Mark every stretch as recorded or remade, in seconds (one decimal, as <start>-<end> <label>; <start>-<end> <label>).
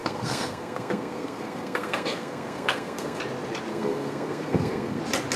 0.0-3.2 remade; 3.2-3.7 recorded; 3.7-5.0 remade; 5.0-5.4 recorded